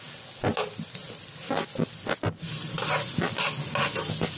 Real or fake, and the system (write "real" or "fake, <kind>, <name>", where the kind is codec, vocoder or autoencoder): real